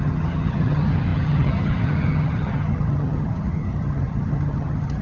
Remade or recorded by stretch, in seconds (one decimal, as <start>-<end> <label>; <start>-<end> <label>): 0.0-5.0 remade